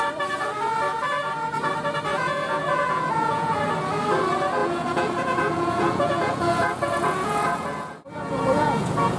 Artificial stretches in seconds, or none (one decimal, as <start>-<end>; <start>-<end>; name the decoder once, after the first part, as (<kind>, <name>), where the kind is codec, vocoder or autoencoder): 2.1-3.6 (vocoder, Vocos); 4.6-9.2

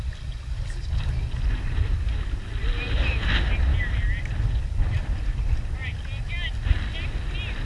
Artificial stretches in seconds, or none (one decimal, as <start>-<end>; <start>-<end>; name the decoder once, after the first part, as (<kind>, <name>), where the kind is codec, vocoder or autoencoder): none

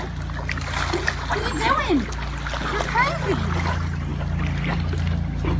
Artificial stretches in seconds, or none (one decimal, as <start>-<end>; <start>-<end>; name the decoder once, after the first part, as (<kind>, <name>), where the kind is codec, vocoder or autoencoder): none